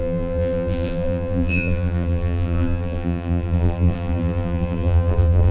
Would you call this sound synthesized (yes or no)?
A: yes